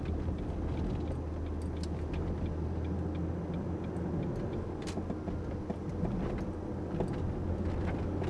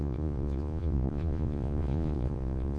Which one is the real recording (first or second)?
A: first